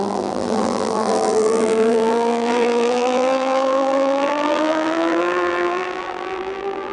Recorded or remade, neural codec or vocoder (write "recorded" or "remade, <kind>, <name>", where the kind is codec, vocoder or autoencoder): remade, vocoder, BigVGAN v2